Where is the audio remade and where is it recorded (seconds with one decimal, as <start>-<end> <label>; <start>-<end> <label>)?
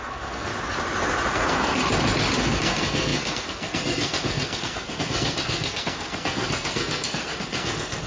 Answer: 0.0-0.5 remade; 0.5-1.3 recorded; 1.3-1.8 remade; 1.8-2.4 recorded; 2.4-8.1 remade